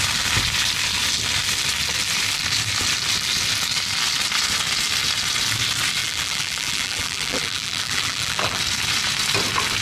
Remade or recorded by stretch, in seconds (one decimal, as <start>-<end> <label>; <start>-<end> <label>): 0.0-6.0 recorded; 6.0-8.6 remade; 8.6-9.8 recorded